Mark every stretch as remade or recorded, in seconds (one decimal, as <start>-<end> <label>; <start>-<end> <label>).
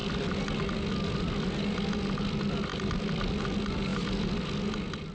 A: 0.0-5.1 recorded